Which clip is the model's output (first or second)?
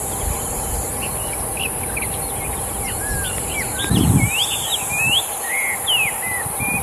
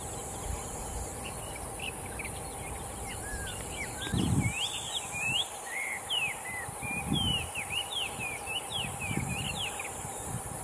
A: second